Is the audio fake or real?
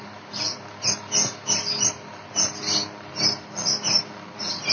real